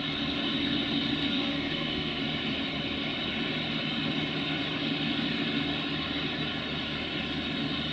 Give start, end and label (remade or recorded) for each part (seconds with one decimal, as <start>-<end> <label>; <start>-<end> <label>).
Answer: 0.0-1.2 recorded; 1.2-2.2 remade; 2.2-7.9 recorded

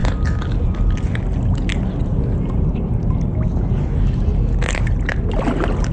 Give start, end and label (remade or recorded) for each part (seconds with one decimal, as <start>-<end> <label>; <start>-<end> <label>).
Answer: 0.0-5.9 recorded

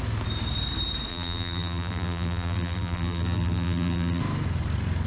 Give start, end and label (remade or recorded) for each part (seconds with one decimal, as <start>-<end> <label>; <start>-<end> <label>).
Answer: 0.0-1.1 recorded; 1.1-4.2 remade; 4.2-5.1 recorded

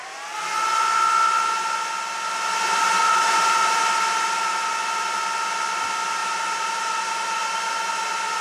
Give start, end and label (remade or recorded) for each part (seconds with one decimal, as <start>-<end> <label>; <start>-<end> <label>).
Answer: 0.0-2.8 recorded; 2.8-4.7 remade; 4.7-6.2 recorded; 6.2-7.9 remade; 7.9-8.4 recorded

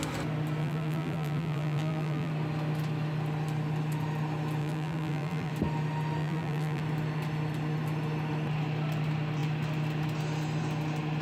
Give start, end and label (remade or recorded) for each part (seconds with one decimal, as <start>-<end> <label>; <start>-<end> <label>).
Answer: 0.0-0.6 recorded; 0.6-2.3 remade; 2.3-4.6 recorded; 4.6-5.5 remade; 5.5-6.2 recorded; 6.2-6.8 remade; 6.8-11.2 recorded

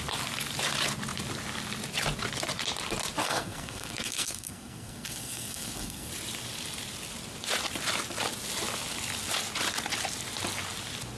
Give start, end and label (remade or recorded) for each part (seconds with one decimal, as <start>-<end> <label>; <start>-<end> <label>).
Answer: 0.0-3.2 recorded; 3.2-6.1 remade; 6.1-11.2 recorded

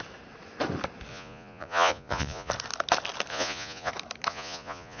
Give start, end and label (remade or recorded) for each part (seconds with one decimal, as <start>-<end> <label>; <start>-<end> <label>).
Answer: 0.0-1.1 recorded; 1.1-2.5 remade; 2.5-3.3 recorded; 3.3-3.9 remade; 3.9-4.3 recorded; 4.3-5.0 remade

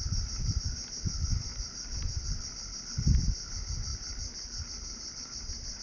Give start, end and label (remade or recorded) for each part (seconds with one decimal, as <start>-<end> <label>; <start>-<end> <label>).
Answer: 0.0-5.8 recorded